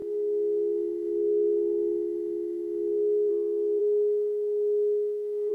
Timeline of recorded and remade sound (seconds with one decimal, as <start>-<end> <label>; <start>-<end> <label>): 0.0-3.3 remade; 3.3-3.8 recorded; 3.8-5.5 remade